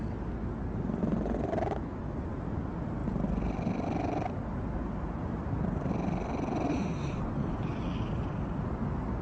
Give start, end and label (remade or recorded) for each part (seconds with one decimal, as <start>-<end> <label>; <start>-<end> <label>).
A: 0.0-9.2 recorded